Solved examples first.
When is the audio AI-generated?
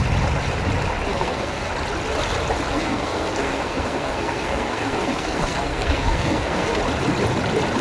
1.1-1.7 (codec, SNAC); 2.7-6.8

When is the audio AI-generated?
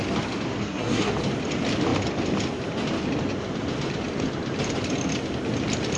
0.6-1.1 (codec, SNAC)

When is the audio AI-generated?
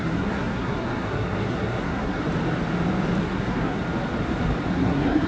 0.0-2.2 (codec, SNAC); 3.2-3.8; 4.7-5.3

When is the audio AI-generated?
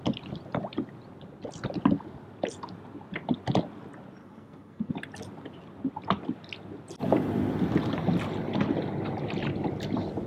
4.2-4.9 (codec, SNAC)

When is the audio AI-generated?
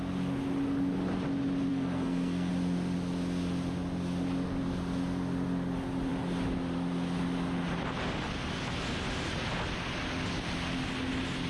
1.7-2.5 (codec, SNAC)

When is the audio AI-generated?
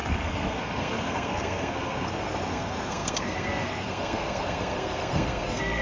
0.0-5.8 (codec, SNAC)